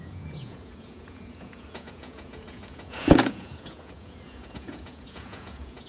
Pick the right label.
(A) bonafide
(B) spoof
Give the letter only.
B